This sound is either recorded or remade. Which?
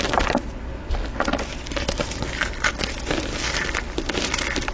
recorded